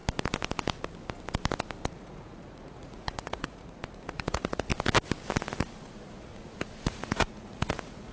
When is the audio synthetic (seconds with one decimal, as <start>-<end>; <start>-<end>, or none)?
1.9-4.7; 5.6-8.1